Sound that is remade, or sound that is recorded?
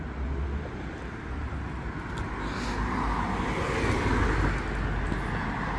recorded